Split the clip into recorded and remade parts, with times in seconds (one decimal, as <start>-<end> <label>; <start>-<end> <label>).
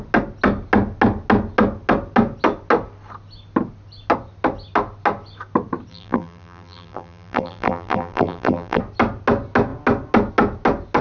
0.0-5.9 recorded; 5.9-8.8 remade; 8.8-11.0 recorded